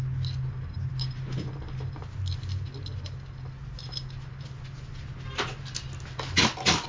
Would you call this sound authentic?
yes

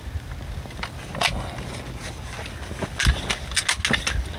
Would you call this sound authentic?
yes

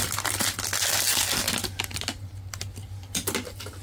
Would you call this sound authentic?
yes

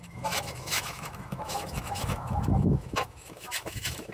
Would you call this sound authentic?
no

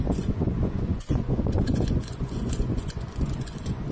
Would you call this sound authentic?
no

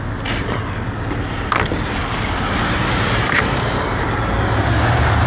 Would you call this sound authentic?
yes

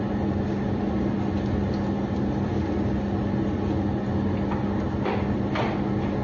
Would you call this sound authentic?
yes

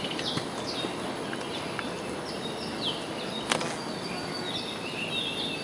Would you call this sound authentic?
yes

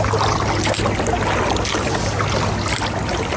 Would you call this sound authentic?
yes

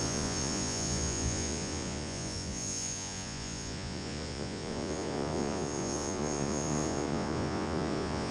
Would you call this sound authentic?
no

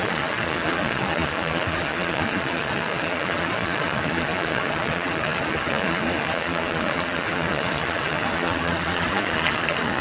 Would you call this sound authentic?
no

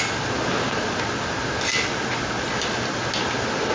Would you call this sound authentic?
yes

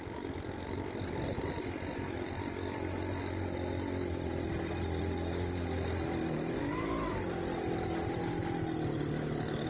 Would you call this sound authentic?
yes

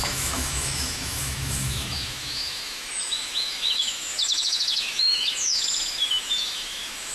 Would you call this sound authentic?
no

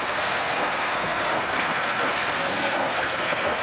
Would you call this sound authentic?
no